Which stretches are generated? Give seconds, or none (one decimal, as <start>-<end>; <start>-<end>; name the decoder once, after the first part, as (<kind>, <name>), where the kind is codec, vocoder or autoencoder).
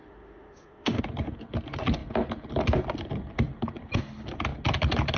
0.0-1.0 (autoencoder, DAC-VAE)